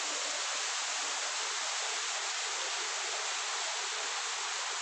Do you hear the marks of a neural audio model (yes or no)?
no